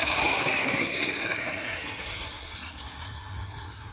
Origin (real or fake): fake